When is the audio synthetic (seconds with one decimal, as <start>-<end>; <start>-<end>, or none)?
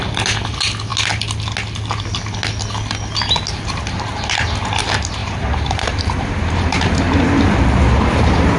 5.2-7.0